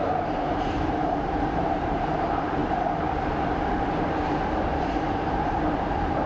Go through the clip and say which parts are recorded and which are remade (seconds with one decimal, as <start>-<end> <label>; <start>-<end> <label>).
0.0-6.3 remade